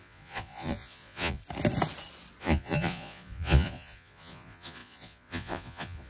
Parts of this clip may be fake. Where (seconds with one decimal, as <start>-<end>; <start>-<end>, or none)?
0.0-1.4; 2.4-6.1